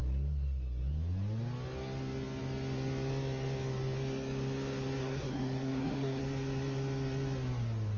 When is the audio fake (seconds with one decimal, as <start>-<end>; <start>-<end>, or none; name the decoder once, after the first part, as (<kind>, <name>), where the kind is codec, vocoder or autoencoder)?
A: 5.0-6.2 (codec, SNAC)